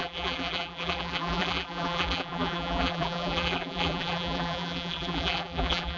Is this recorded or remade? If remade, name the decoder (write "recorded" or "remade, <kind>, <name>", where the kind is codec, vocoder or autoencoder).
remade, vocoder, BigVGAN v2